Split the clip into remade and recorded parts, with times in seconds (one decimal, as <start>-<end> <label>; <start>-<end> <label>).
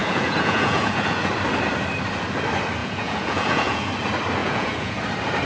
0.0-1.3 remade; 1.3-2.8 recorded; 2.8-3.9 remade; 3.9-4.4 recorded; 4.4-5.0 remade; 5.0-5.5 recorded